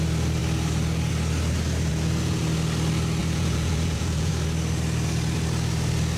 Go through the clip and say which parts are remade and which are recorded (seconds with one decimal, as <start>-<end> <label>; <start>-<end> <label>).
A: 0.0-1.9 recorded; 1.9-2.4 remade; 2.4-3.2 recorded; 3.2-4.3 remade; 4.3-6.2 recorded